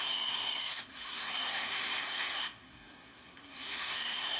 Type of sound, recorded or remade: remade